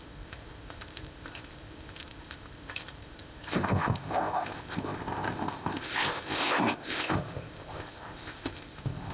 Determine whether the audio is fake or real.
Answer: fake